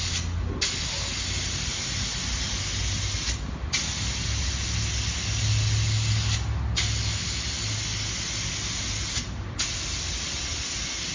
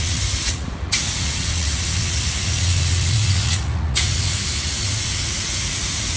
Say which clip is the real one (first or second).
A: first